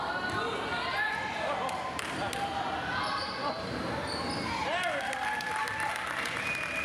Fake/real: real